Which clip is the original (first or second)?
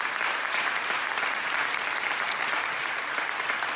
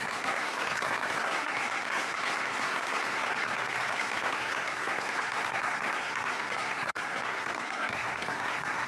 first